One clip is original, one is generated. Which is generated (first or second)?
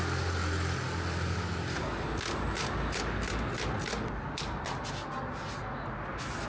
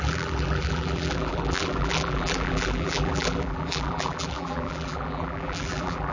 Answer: second